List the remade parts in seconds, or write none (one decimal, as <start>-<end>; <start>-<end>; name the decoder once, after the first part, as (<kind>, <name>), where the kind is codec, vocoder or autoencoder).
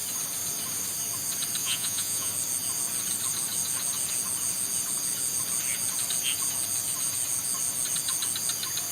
1.6-2.3 (vocoder, Vocos)